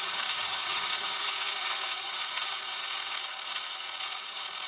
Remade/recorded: remade